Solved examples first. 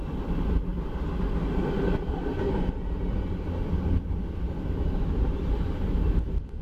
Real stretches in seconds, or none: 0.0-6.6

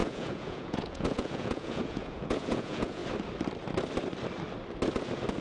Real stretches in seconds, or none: 3.0-5.4